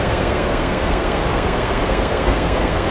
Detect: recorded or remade remade